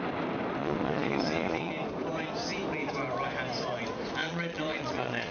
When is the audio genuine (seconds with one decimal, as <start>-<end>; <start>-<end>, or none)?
0.0-0.6; 1.7-4.2